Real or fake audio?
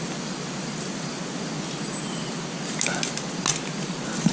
real